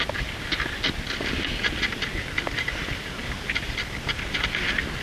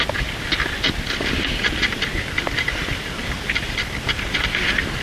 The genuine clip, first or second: first